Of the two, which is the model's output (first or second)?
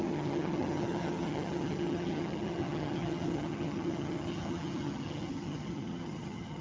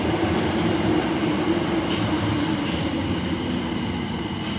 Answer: first